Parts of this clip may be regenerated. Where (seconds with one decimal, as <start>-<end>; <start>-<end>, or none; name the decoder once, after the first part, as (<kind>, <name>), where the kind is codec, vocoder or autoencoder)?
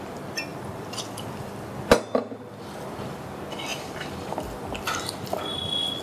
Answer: 0.5-3.3 (vocoder, BigVGAN v2); 3.7-5.6